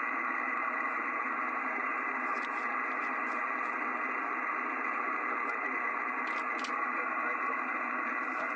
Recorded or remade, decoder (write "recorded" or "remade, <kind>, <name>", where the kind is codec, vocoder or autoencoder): recorded